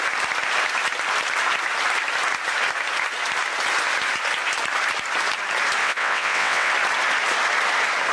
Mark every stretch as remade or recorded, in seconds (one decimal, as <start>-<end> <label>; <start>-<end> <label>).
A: 0.0-5.8 recorded; 5.8-6.7 remade; 6.7-8.1 recorded